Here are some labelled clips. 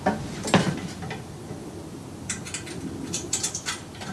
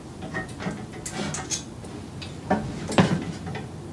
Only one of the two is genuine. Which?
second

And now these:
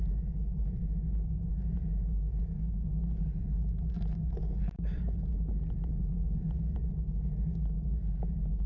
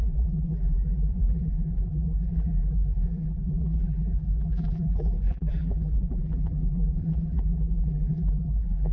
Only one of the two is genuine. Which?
first